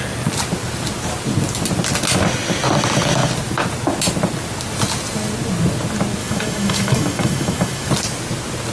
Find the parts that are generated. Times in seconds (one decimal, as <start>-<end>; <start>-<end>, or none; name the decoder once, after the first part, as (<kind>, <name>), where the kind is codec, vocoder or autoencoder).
6.2-7.9 (autoencoder, DAC-VAE)